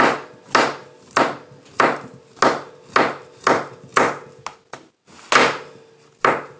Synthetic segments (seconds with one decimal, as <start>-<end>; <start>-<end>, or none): none